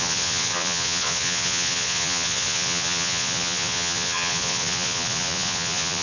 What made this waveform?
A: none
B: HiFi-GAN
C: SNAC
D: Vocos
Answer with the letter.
D